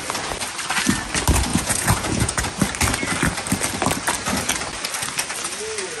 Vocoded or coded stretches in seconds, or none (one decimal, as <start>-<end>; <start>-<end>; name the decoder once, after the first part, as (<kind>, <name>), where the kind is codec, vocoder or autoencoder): 1.5-2.5 (vocoder, Vocos)